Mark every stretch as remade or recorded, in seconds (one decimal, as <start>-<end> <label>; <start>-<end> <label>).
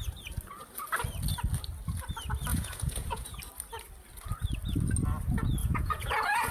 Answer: 0.0-2.5 recorded; 2.5-3.4 remade; 3.4-5.6 recorded; 5.6-6.5 remade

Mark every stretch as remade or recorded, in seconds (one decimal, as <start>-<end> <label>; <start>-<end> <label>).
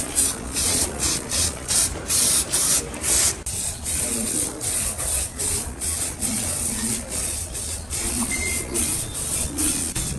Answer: 0.0-1.8 remade; 1.8-3.5 recorded; 3.5-10.2 remade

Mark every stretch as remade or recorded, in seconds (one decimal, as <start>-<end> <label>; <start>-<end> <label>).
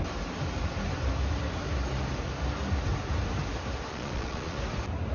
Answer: 0.0-3.9 recorded; 3.9-4.6 remade; 4.6-5.1 recorded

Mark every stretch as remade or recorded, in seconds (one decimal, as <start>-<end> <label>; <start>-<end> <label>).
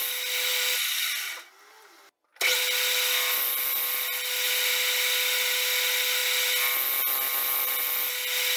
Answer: 0.0-8.6 recorded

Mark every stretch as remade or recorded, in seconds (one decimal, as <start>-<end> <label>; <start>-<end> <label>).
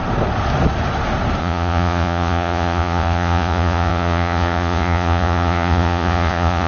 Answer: 0.0-1.4 recorded; 1.4-6.7 remade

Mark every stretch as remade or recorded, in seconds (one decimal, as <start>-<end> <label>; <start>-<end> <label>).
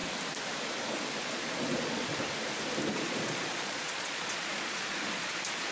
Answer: 0.0-1.2 recorded; 1.2-2.1 remade; 2.1-2.9 recorded; 2.9-5.7 remade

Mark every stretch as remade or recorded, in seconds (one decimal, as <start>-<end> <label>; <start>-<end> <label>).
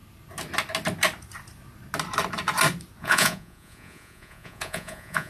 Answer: 0.0-3.0 recorded; 3.0-5.3 remade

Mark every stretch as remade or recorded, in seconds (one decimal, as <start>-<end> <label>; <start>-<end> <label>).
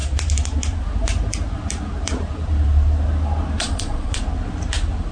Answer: 0.0-3.6 recorded; 3.6-4.2 remade; 4.2-5.1 recorded